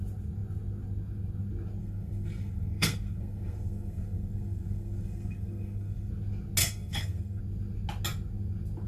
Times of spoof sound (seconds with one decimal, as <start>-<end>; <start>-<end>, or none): 1.8-6.1; 6.6-7.4